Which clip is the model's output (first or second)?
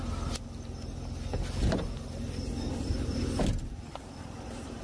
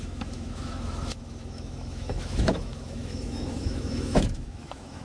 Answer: second